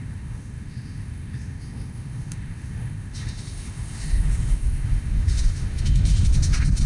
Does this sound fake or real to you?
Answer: fake